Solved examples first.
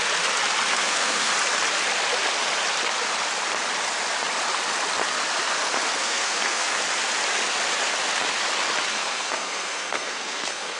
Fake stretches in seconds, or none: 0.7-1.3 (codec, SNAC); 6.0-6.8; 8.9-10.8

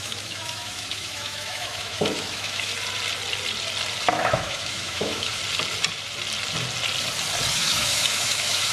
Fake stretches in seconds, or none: 0.0-2.7 (autoencoder, DAC-VAE); 4.1-5.4; 7.5-8.7

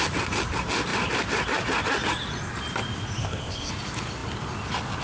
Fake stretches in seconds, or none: 3.2-3.7 (codec, ZipCodec)

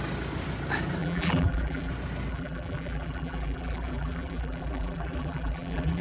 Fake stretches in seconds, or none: 1.0-1.9 (vocoder, BigVGAN v2); 2.3-6.0

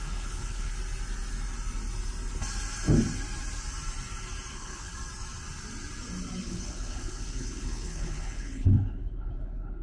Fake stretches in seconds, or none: 0.0-0.7 (codec, HILCodec); 4.5-4.9; 6.4-9.8

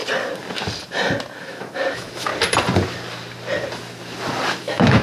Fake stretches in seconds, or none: 1.4-2.3 (autoencoder, DAC-VAE); 4.6-5.0

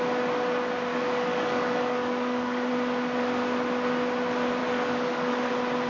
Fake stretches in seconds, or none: 0.9-2.7 (codec, DAC); 4.6-5.5

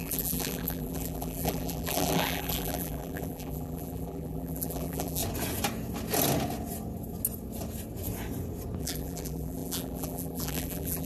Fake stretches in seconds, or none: 0.0-5.2 (vocoder, BigVGAN v2); 8.8-11.1